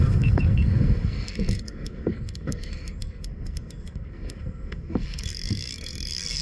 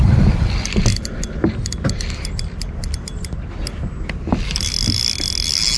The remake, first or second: first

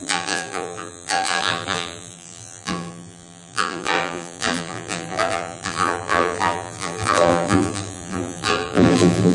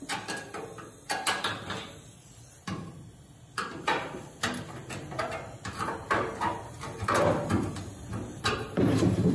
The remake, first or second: first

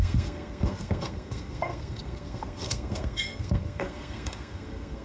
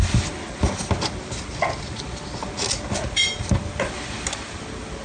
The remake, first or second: first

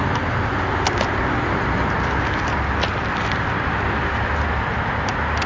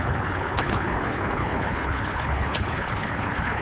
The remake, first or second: second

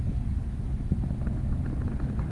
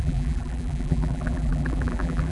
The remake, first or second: second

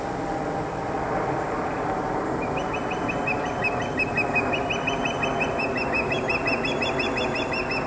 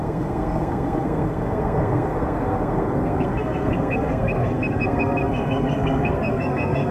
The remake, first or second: second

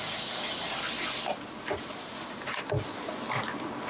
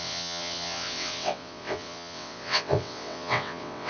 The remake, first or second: second